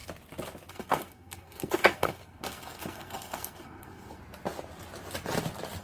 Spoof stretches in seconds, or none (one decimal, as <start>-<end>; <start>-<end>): 0.7-4.2